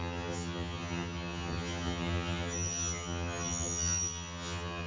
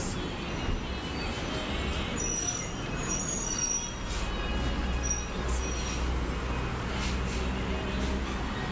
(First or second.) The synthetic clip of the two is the first